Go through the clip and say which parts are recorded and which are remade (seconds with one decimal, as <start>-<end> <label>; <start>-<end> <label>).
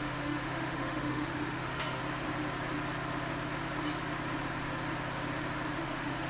0.0-2.0 remade; 2.0-5.8 recorded; 5.8-6.3 remade